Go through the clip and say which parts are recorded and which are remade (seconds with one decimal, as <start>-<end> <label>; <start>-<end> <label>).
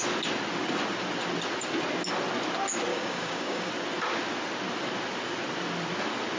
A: 0.0-2.9 recorded; 2.9-3.7 remade; 3.7-6.4 recorded